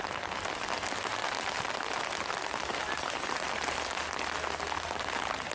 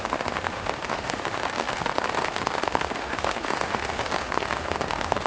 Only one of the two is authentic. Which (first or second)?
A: first